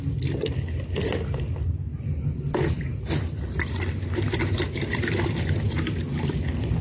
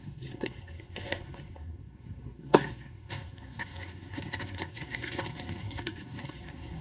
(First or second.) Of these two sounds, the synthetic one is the second